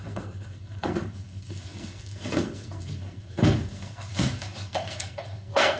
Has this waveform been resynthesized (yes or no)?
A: yes